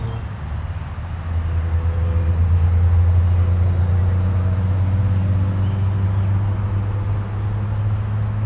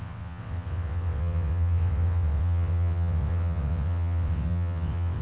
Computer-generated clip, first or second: second